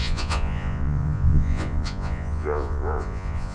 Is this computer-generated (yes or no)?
yes